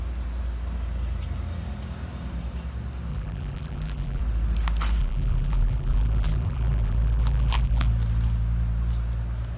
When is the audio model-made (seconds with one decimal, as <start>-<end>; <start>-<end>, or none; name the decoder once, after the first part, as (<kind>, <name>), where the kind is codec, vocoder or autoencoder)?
3.1-4.2 (vocoder, BigVGAN v2); 5.0-7.9